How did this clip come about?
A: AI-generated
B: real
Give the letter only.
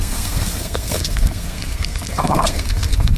A